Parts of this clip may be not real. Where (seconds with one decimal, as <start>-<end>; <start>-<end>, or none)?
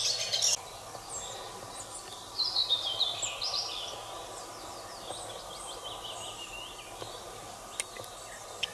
none